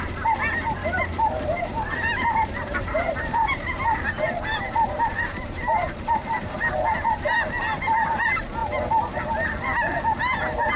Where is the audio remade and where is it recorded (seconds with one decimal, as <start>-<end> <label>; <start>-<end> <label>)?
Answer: 0.0-1.1 recorded; 1.1-3.7 remade; 3.7-4.5 recorded; 4.5-5.6 remade; 5.6-10.8 recorded